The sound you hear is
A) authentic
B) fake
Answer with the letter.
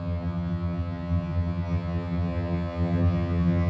B